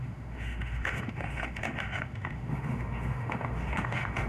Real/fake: fake